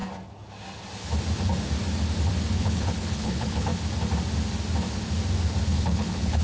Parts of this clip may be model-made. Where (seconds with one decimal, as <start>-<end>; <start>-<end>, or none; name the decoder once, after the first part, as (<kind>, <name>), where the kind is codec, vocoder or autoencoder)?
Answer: 2.5-3.7 (codec, HILCodec); 5.7-6.4